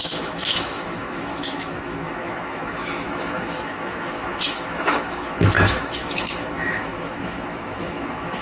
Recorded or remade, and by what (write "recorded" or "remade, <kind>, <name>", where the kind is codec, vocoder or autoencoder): remade, autoencoder, DAC-VAE